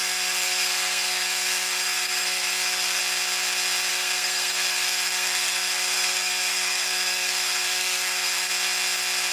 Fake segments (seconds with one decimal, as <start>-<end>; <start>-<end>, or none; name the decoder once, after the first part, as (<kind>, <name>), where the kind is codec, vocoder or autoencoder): 0.0-3.0 (codec, SNAC); 3.9-8.5